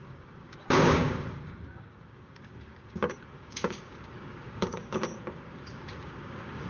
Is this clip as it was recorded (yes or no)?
no